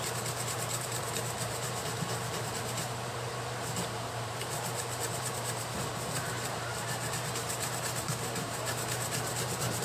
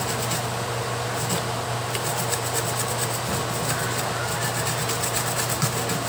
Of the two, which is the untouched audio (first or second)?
second